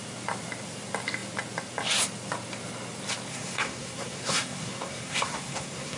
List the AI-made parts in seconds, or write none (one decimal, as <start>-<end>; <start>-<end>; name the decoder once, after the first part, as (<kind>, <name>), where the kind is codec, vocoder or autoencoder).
3.3-6.0 (codec, SNAC)